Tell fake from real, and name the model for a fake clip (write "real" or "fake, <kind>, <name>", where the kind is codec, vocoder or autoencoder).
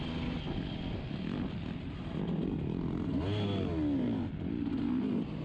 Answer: real